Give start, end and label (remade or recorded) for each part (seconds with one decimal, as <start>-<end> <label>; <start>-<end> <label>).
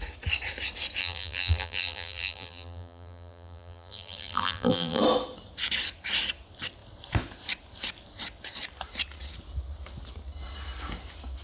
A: 0.0-1.0 recorded; 1.0-5.0 remade; 5.0-11.4 recorded